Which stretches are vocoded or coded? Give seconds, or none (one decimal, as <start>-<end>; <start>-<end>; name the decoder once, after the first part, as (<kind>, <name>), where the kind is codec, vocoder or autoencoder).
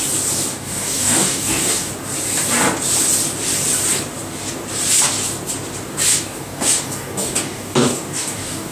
0.5-1.9 (codec, DAC); 6.1-8.7